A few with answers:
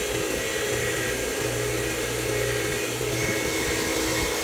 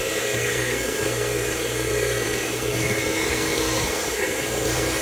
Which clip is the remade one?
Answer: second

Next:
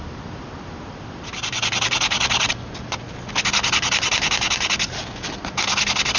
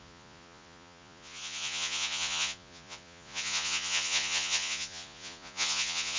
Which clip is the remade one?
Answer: second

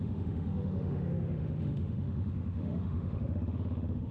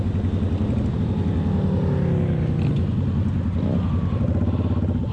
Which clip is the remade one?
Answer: first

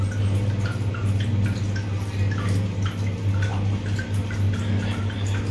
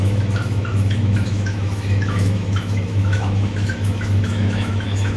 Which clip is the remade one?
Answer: second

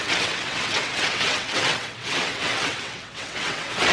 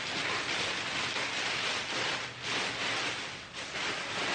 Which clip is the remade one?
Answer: first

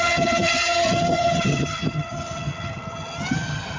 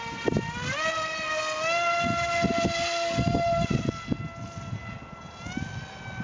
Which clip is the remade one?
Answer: first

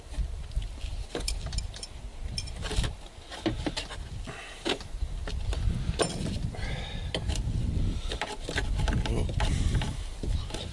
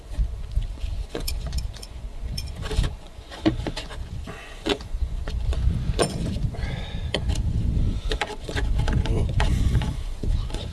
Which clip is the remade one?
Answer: second